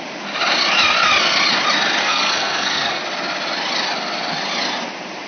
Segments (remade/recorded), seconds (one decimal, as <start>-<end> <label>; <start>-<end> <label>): 0.0-2.0 recorded; 2.0-3.0 remade; 3.0-5.3 recorded